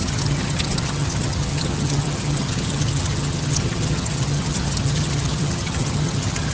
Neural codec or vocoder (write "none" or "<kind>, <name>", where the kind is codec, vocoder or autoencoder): vocoder, HiFi-GAN